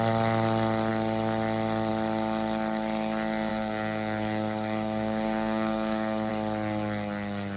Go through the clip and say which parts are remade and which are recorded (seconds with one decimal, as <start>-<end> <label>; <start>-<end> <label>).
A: 0.0-3.5 recorded; 3.5-6.3 remade; 6.3-7.6 recorded

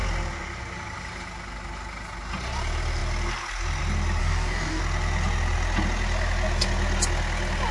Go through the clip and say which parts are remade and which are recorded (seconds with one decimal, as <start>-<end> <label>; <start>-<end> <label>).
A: 0.0-4.2 recorded; 4.2-4.8 remade; 4.8-7.7 recorded